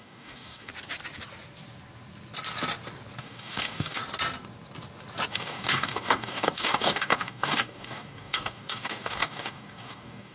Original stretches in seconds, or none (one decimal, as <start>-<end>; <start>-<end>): 0.7-3.2; 4.0-5.3